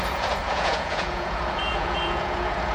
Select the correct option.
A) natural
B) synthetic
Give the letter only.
B